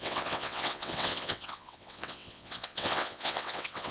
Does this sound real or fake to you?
fake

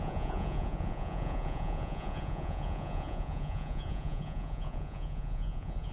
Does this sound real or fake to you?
fake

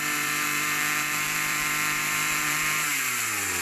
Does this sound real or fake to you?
fake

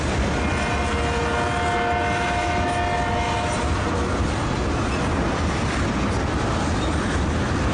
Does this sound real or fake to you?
real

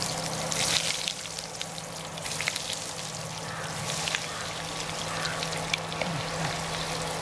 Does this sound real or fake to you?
real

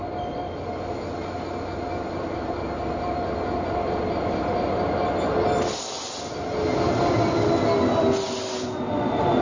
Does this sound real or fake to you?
real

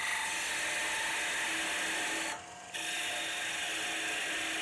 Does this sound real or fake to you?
real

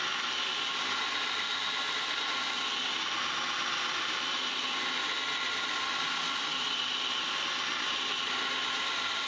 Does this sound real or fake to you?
real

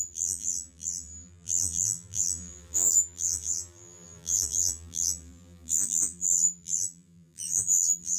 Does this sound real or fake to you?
fake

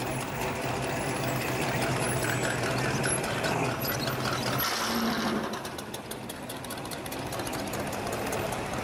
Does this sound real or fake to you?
real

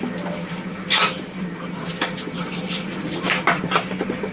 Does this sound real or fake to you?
fake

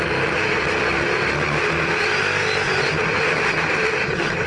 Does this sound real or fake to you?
real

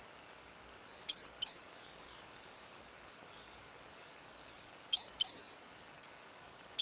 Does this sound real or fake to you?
fake